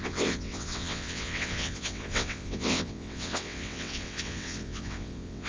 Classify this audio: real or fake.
fake